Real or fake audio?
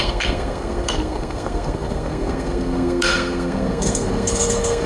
fake